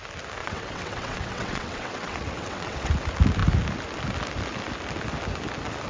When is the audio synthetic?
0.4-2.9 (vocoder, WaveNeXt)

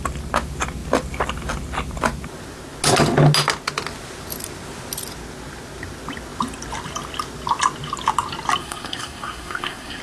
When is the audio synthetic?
8.6-10.0 (codec, SNAC)

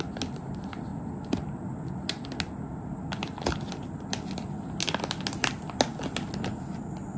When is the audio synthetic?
5.9-6.8 (vocoder, BigVGAN v2)